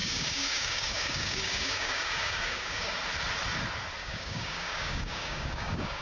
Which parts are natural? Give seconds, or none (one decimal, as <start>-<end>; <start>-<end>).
3.0-4.0